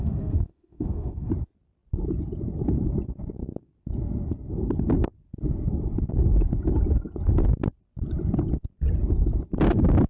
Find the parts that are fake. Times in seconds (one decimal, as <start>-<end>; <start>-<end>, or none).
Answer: 0.0-1.3